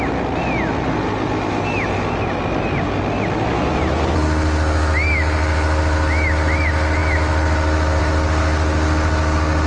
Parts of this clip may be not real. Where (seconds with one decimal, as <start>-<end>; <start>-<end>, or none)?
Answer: none